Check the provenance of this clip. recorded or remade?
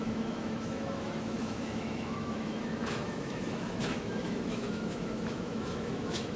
remade